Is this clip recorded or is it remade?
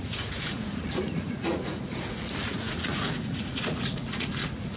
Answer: remade